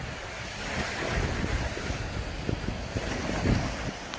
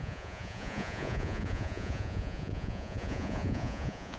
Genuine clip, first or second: first